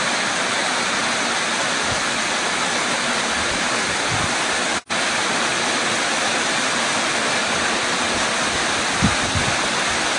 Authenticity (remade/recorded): recorded